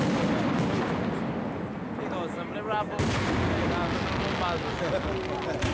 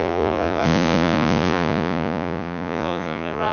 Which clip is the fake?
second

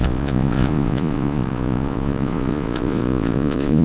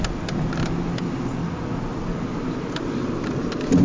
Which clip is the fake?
first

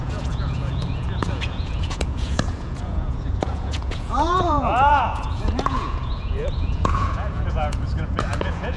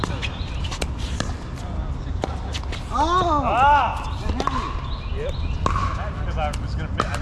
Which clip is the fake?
first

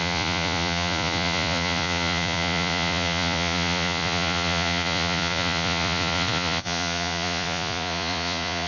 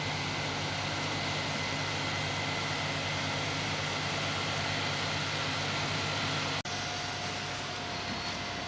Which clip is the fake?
first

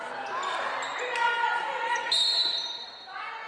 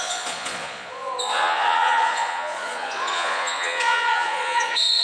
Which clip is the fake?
second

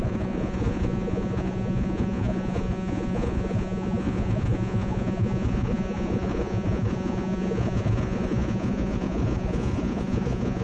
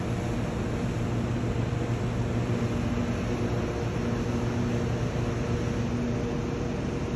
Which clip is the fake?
first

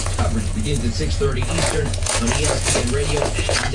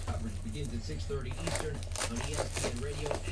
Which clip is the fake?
first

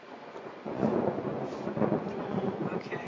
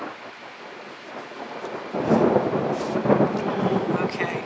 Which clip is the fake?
first